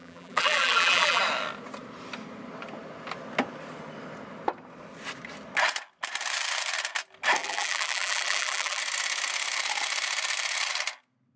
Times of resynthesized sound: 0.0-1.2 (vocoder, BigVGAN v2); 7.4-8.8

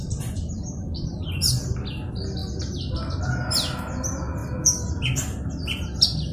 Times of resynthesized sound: none